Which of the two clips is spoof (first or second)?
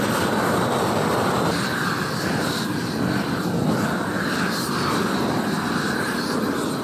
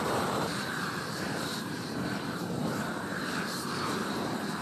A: second